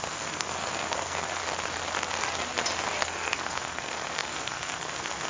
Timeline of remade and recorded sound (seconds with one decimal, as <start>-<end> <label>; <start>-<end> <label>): 0.0-1.4 remade; 1.4-3.0 recorded; 3.0-5.3 remade

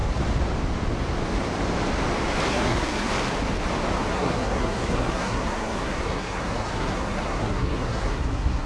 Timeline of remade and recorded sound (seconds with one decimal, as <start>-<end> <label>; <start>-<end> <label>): 0.0-2.5 recorded; 2.5-3.1 remade; 3.1-4.1 recorded; 4.1-8.7 remade

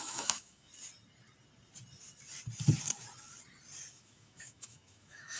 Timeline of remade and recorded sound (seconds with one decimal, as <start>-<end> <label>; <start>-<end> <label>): 0.0-0.7 remade; 0.7-3.9 recorded; 3.9-5.4 remade

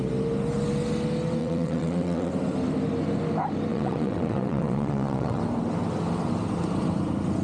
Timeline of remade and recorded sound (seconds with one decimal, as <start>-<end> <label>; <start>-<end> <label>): 0.0-1.4 recorded; 1.4-2.3 remade; 2.3-3.7 recorded; 3.7-5.4 remade; 5.4-7.4 recorded

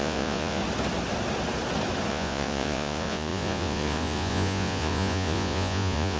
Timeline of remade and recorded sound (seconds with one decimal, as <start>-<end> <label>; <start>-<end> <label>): 0.0-0.6 remade; 0.6-2.1 recorded; 2.1-6.2 remade